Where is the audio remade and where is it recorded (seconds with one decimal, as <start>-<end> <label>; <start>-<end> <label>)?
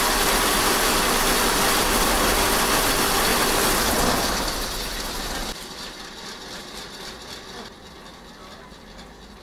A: 0.0-9.4 recorded